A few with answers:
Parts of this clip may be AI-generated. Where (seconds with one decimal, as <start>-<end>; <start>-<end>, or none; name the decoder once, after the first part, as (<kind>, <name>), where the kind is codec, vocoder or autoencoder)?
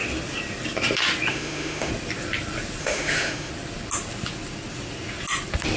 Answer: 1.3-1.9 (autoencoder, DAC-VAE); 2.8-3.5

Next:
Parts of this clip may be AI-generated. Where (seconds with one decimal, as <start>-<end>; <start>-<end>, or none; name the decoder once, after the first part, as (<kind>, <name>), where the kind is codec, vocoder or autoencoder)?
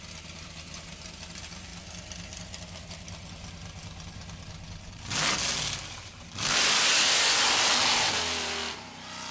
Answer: none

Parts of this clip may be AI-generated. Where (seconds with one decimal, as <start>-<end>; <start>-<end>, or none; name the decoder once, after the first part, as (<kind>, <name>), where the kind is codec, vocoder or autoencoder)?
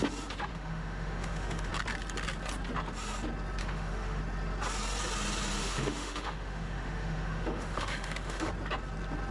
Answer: 0.5-1.7 (autoencoder, DAC-VAE); 3.6-4.2; 5.6-8.5